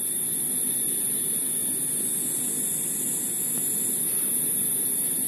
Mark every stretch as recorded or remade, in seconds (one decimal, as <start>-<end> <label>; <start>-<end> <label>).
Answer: 0.0-5.3 recorded